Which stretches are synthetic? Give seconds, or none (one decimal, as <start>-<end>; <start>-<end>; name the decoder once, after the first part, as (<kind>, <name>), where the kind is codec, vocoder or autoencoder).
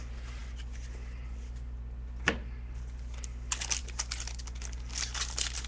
none